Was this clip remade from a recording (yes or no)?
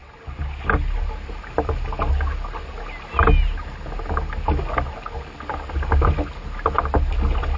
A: no